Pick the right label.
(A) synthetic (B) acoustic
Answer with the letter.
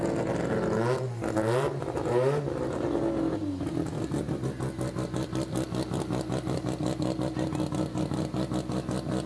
B